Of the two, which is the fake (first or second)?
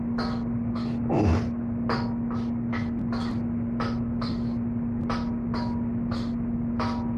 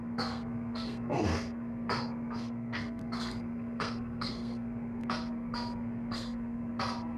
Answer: second